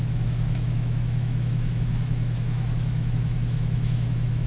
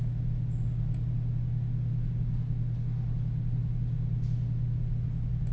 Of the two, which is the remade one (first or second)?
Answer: first